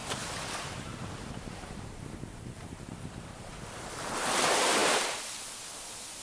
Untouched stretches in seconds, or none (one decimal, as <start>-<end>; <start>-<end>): 0.0-0.6; 4.8-6.2